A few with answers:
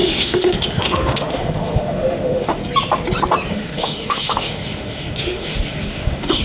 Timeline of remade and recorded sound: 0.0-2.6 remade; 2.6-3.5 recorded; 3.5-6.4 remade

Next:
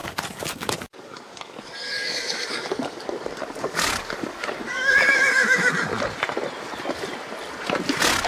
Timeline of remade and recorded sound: 0.0-5.9 remade; 5.9-8.3 recorded